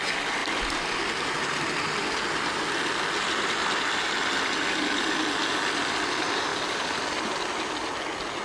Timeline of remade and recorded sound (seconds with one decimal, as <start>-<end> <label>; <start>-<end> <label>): 0.0-8.4 recorded